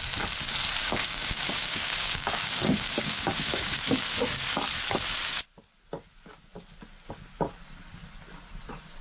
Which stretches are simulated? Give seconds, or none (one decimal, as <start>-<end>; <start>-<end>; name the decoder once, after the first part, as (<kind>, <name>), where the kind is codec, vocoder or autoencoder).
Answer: 0.8-4.6 (codec, DAC)